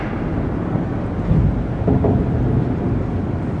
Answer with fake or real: real